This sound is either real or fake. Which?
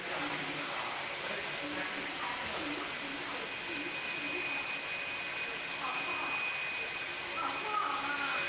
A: real